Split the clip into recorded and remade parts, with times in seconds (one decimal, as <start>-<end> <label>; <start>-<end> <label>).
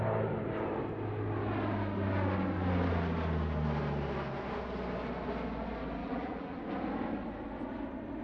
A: 0.0-6.0 recorded; 6.0-6.6 remade; 6.6-8.2 recorded